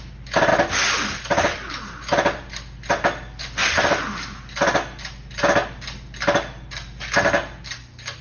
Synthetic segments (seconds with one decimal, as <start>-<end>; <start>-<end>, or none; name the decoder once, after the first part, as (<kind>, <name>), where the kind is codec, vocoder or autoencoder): none